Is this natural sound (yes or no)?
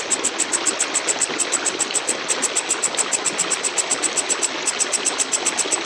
yes